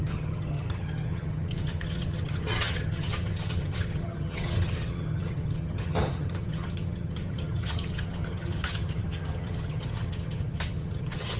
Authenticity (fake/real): fake